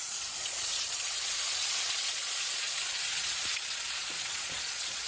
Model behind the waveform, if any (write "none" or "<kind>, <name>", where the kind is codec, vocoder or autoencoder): vocoder, Vocos